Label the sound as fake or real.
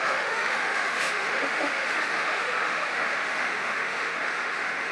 fake